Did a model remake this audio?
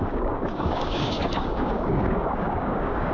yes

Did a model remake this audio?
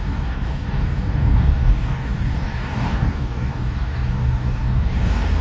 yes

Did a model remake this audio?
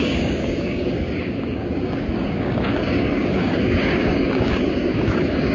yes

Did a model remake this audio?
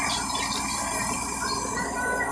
no